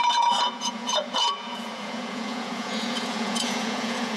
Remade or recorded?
remade